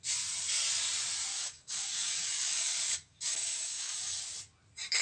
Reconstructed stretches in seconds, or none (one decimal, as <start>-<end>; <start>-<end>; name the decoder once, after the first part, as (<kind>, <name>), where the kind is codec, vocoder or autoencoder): 1.3-4.2 (codec, DAC)